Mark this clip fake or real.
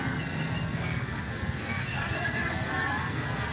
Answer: fake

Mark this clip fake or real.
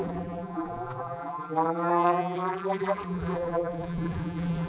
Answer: fake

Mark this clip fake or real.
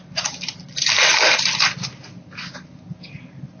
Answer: real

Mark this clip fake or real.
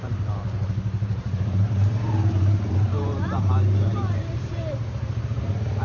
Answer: fake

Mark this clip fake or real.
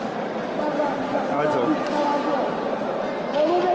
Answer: real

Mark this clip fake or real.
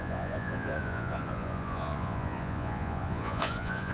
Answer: fake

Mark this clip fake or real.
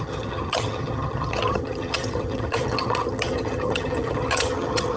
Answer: fake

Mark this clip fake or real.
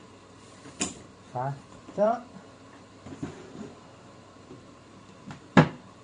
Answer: fake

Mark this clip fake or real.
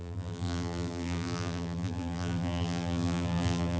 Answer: fake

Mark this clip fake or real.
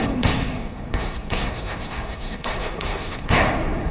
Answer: fake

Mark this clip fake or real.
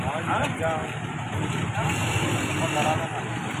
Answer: real